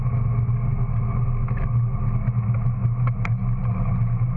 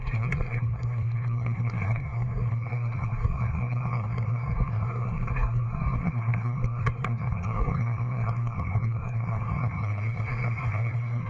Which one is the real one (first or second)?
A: first